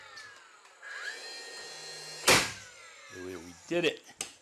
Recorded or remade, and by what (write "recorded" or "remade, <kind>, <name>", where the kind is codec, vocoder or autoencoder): recorded